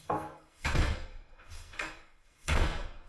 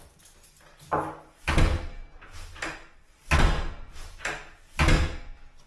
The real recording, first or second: second